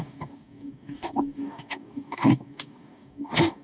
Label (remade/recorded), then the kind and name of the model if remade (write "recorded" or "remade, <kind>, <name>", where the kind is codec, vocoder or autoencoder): remade, codec, DAC